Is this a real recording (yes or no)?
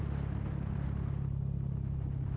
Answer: yes